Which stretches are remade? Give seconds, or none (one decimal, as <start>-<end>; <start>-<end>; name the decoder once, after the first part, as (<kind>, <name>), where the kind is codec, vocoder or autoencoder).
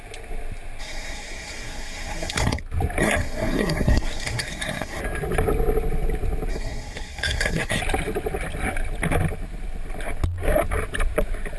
0.8-2.6 (codec, SNAC); 3.0-5.0; 6.5-7.8